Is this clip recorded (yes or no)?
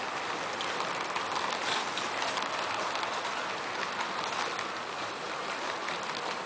yes